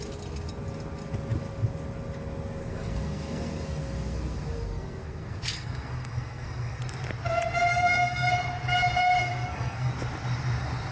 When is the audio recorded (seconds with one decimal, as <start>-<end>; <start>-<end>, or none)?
0.0-2.6; 6.8-7.7; 8.3-9.2; 9.9-10.9